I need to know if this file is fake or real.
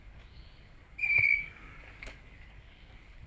fake